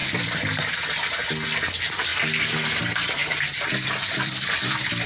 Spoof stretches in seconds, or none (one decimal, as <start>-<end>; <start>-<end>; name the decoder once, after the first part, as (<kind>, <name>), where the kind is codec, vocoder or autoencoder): 0.0-0.6 (vocoder, BigVGAN v2); 2.1-2.8; 3.2-5.1